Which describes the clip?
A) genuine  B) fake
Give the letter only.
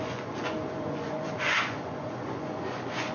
B